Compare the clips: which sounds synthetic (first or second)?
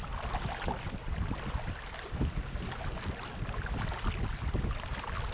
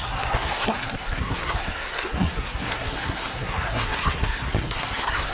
second